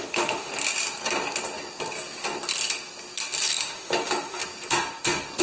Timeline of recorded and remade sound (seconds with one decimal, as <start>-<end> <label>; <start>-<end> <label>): 0.0-0.5 remade; 0.5-3.6 recorded; 3.6-4.4 remade; 4.4-5.4 recorded